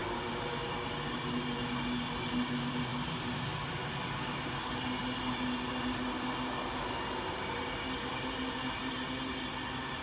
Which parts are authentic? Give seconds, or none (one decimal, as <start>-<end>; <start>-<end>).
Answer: 0.0-10.0